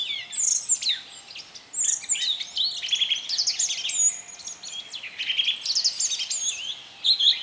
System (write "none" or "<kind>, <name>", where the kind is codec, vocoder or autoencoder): none